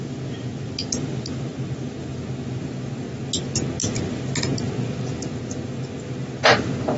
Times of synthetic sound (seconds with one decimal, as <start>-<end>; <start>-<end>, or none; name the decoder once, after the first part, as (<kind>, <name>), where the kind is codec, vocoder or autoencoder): none